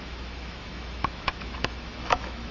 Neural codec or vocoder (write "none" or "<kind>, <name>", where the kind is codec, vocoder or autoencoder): autoencoder, DAC-VAE